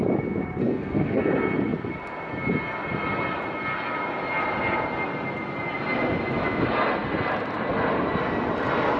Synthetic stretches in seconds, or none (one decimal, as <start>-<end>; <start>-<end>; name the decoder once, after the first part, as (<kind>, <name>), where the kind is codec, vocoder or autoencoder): 0.6-1.2 (codec, SNAC)